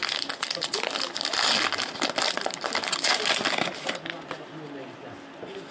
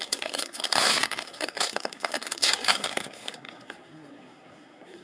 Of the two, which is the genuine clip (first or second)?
first